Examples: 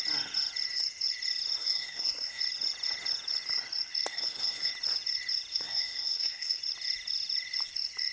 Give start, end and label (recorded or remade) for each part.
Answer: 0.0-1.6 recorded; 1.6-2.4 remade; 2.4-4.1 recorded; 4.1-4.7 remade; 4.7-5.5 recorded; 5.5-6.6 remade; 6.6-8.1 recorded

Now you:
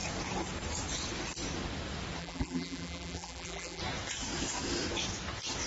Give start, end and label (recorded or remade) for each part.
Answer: 0.0-2.2 recorded; 2.2-3.8 remade; 3.8-5.7 recorded

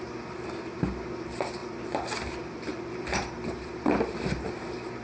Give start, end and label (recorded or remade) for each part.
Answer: 0.0-1.6 recorded; 1.6-4.6 remade; 4.6-5.0 recorded

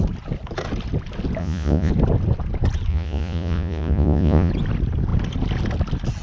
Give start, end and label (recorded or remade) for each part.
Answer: 0.0-1.4 recorded; 1.4-1.9 remade; 1.9-2.9 recorded; 2.9-4.5 remade; 4.5-6.2 recorded

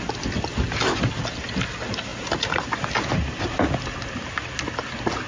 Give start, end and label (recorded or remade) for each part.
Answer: 0.0-5.3 recorded

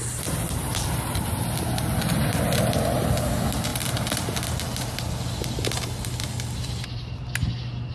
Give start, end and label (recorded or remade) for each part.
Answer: 0.0-7.9 recorded

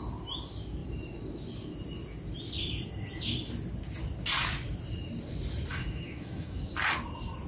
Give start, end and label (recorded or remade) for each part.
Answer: 0.0-5.7 recorded; 5.7-6.6 remade; 6.6-7.5 recorded